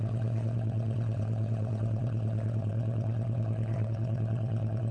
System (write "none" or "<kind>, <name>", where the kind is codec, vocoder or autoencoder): vocoder, WaveNeXt